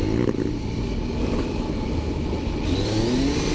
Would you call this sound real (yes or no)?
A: yes